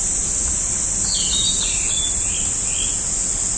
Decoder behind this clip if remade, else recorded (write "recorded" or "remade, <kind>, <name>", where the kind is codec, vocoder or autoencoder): recorded